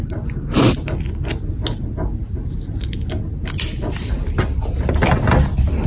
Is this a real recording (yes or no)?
yes